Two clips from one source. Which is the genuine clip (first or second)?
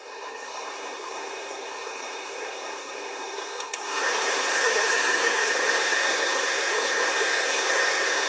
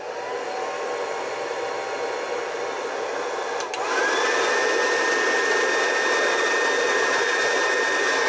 second